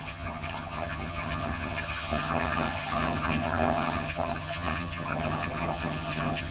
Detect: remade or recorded remade